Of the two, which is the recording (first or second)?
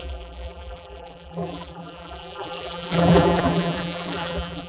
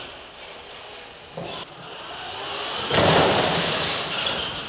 second